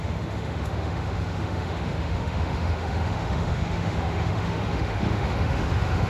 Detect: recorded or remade remade